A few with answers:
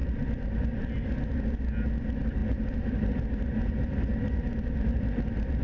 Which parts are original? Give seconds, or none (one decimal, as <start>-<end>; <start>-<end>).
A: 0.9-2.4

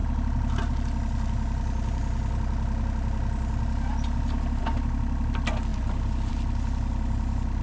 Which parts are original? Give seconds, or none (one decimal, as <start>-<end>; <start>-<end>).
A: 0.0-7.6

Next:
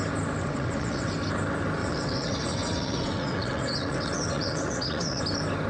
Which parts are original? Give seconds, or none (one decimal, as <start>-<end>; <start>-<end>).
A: 0.0-0.4; 1.1-1.8; 5.2-5.7

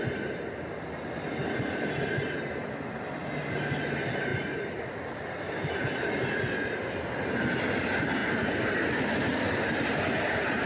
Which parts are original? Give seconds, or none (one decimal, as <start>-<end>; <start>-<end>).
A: 0.0-10.7